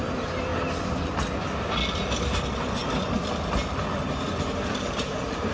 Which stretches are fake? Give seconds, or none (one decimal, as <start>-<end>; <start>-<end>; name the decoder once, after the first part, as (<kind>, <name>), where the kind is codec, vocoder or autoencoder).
0.0-0.5 (vocoder, BigVGAN v2); 1.9-2.8; 4.7-5.5